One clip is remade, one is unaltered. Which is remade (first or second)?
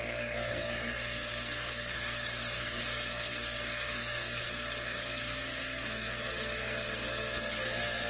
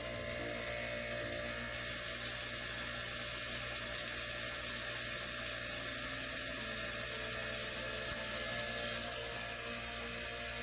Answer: first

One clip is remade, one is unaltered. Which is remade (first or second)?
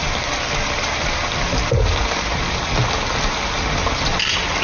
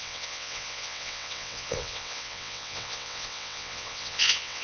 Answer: second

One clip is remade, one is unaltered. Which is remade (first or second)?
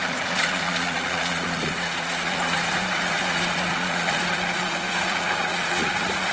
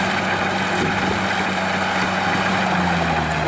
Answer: first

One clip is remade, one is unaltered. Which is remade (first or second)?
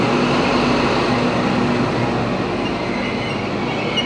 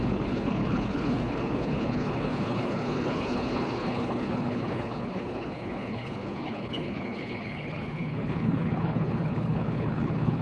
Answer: second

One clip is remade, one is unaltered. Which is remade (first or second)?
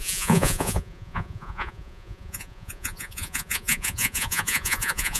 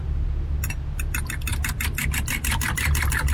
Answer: first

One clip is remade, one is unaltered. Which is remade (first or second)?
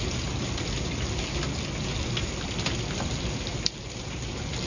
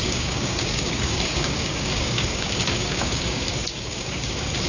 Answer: second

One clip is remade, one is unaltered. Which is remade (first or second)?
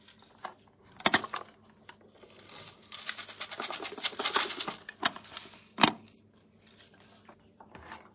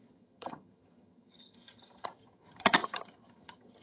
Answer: second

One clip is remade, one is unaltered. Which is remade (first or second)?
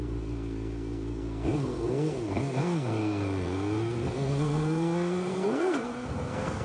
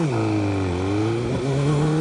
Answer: first